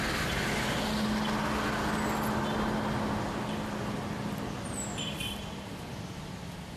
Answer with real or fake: real